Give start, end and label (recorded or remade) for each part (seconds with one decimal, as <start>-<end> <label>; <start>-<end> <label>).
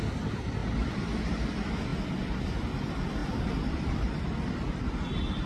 0.0-0.6 recorded; 0.6-1.2 remade; 1.2-3.2 recorded; 3.2-4.2 remade; 4.2-5.5 recorded